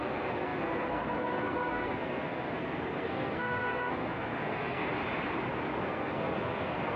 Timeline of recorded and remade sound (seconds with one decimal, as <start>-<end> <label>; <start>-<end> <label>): 0.0-4.9 remade; 4.9-5.7 recorded; 5.7-7.0 remade